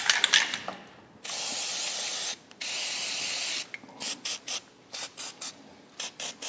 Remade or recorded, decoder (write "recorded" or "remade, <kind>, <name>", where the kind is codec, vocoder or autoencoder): recorded